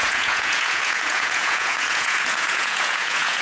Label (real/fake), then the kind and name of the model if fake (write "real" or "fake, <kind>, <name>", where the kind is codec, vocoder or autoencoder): fake, vocoder, Vocos